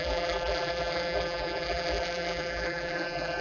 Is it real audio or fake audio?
fake